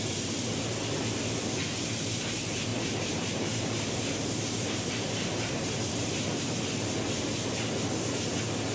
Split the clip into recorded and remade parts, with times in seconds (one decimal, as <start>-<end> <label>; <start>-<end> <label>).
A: 0.0-2.7 recorded; 2.7-6.6 remade; 6.6-8.7 recorded